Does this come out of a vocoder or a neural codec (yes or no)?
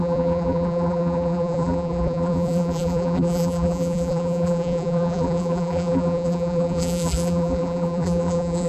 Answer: yes